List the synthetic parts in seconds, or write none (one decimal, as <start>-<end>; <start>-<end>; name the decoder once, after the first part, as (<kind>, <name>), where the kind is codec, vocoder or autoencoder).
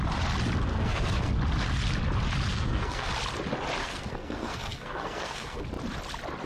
0.7-1.3 (codec, SNAC); 2.5-3.1; 3.8-5.6